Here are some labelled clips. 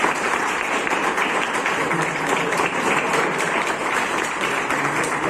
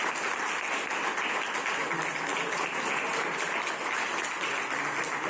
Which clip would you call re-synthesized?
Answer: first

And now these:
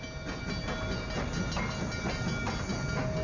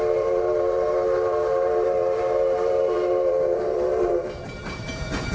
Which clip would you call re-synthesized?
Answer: second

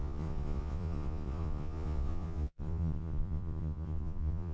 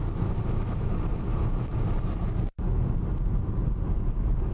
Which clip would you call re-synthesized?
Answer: first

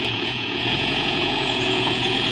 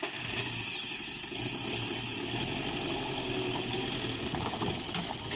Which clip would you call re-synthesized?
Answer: first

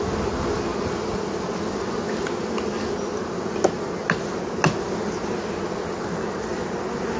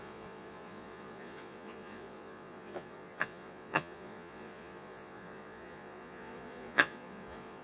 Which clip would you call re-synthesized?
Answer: second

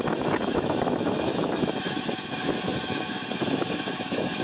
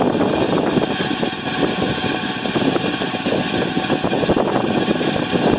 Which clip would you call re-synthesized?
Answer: first